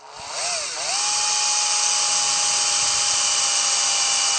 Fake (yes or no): no